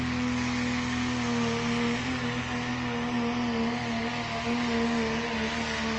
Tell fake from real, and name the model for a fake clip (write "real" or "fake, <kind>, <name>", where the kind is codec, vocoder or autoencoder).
real